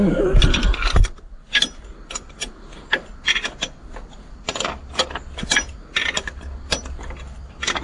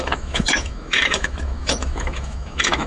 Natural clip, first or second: first